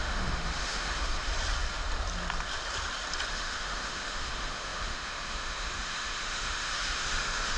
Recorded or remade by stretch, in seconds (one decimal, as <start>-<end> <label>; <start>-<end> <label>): 0.0-1.3 remade; 1.3-3.3 recorded; 3.3-7.6 remade